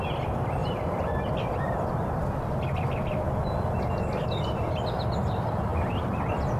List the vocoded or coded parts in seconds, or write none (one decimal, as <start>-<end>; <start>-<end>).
0.0-6.6